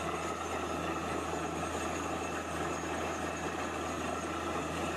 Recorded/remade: recorded